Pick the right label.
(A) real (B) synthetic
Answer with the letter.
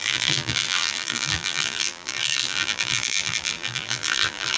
B